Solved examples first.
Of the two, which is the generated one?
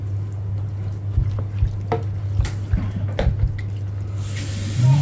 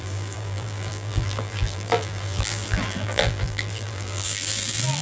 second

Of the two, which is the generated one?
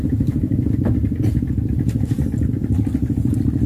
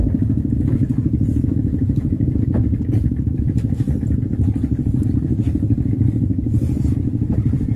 second